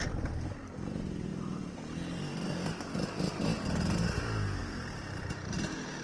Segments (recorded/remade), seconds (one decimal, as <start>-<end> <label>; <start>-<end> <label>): 0.0-4.6 recorded; 4.6-5.3 remade; 5.3-6.0 recorded